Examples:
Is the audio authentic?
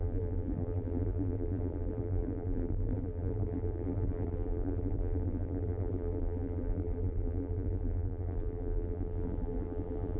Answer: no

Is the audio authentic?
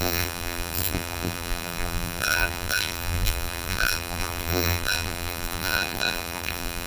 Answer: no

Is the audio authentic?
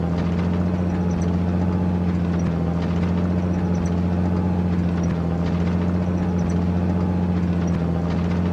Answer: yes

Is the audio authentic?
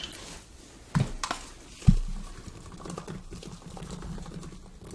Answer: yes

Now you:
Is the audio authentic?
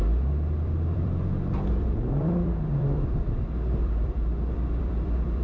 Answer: no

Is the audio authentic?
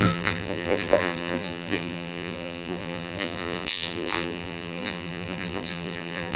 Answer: no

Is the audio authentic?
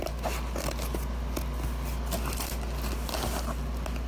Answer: yes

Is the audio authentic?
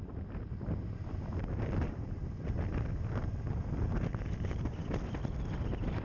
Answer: no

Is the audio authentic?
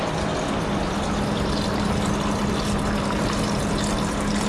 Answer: yes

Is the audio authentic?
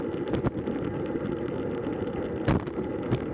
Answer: yes